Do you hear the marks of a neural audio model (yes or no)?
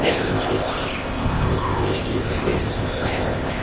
yes